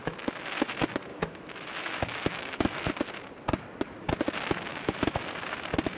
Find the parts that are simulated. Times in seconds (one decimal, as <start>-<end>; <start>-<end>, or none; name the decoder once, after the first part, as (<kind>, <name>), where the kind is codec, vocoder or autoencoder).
0.0-0.5 (autoencoder, DAC-VAE); 1.1-2.9; 4.7-5.3